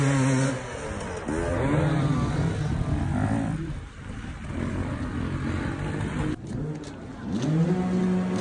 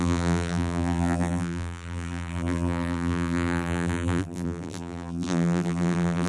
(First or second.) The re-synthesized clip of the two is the second